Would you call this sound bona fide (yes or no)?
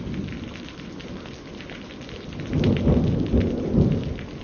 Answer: yes